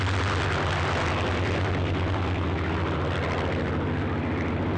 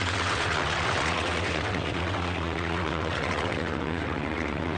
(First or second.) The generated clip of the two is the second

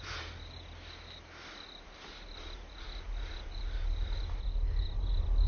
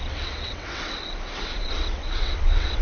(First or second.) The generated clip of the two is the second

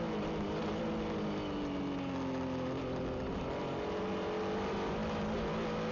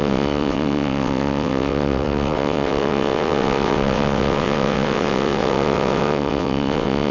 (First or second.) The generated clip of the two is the second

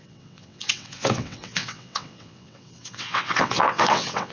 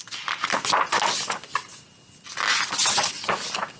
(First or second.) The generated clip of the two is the first